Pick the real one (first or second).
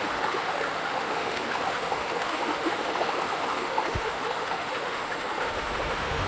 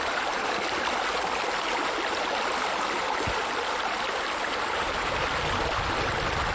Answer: second